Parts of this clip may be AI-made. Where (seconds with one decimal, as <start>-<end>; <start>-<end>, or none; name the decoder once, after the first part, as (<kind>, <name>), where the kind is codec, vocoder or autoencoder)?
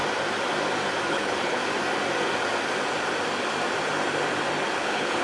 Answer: 1.1-1.6 (codec, HILCodec); 4.7-5.2